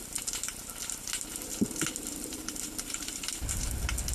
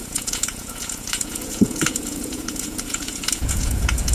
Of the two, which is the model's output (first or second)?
second